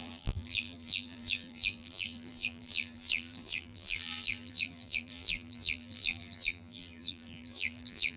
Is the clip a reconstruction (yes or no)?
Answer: yes